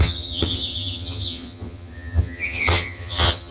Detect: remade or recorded remade